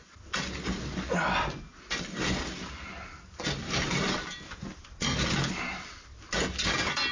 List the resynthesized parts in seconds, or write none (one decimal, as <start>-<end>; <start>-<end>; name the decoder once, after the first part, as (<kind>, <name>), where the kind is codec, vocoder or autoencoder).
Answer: none